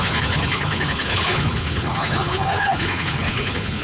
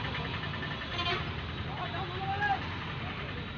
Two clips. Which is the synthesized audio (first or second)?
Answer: first